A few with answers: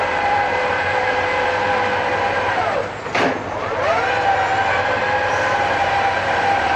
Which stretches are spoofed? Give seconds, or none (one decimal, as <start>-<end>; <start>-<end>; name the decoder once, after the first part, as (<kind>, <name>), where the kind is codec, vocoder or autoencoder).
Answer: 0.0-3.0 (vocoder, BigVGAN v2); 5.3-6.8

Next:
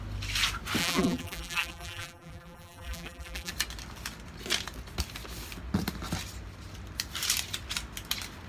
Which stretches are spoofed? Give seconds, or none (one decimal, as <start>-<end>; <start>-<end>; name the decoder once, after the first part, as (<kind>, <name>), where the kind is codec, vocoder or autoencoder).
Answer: 0.8-3.5 (vocoder, BigVGAN v2)

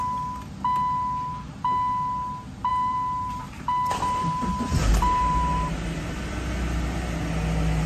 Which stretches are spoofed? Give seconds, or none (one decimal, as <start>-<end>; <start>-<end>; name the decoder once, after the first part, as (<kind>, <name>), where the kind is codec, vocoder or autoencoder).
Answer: 2.7-6.0 (vocoder, BigVGAN v2)

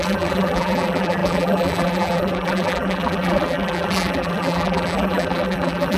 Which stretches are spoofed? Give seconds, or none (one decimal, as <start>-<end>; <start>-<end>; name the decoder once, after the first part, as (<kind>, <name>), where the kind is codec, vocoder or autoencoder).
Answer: 0.0-6.0 (vocoder, BigVGAN v2)

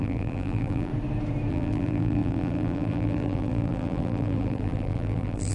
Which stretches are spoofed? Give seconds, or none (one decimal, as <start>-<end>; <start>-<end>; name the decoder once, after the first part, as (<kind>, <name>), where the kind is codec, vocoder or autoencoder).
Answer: 0.0-0.9 (vocoder, BigVGAN v2); 1.5-5.5